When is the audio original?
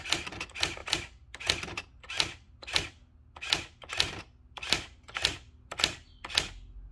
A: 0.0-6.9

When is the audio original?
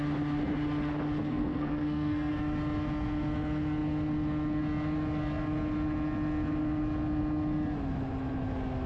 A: 0.0-1.2; 2.3-8.9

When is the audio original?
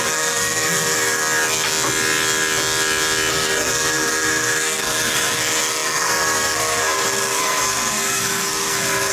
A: 1.2-3.3